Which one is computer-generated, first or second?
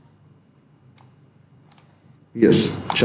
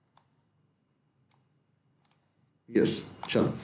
second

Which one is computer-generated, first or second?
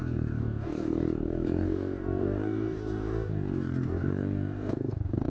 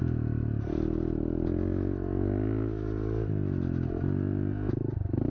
first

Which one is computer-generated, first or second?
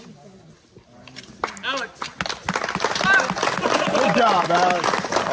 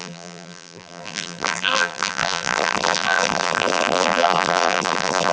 second